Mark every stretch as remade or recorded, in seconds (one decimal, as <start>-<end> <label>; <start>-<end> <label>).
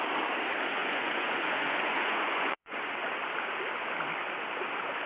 0.0-0.8 recorded; 0.8-2.9 remade; 2.9-5.1 recorded